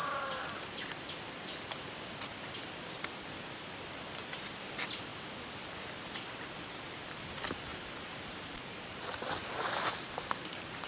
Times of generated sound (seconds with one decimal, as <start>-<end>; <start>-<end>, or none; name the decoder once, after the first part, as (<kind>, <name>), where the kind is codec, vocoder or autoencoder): 0.7-5.1 (vocoder, BigVGAN v2); 5.6-7.7; 9.9-10.9